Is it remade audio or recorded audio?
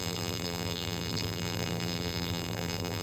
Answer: remade